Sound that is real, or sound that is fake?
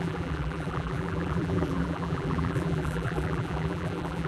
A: fake